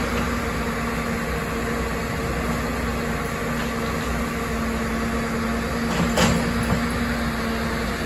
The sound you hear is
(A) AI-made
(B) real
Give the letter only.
B